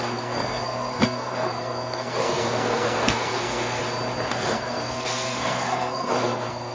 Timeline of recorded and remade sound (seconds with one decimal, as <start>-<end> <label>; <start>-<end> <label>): 0.0-3.8 remade; 3.8-4.3 recorded; 4.3-6.7 remade